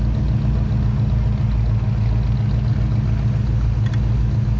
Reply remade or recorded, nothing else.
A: recorded